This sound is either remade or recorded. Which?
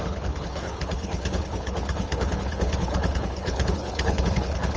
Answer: remade